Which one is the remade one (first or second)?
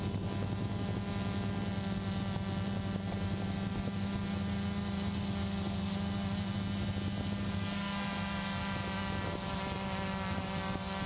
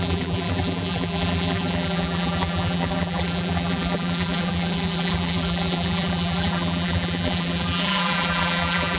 second